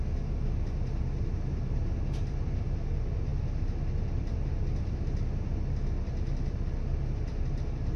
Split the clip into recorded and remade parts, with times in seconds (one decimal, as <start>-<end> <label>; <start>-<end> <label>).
0.0-8.0 recorded